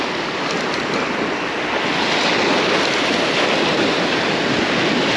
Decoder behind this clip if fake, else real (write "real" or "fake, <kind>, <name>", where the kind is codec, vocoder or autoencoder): real